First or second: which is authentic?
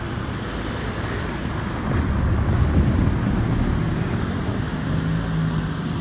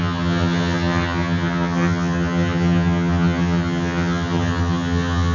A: first